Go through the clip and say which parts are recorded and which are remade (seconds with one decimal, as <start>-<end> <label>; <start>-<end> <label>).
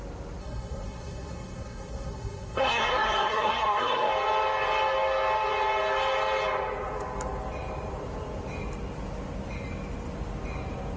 0.0-0.4 recorded; 0.4-4.1 remade; 4.1-11.0 recorded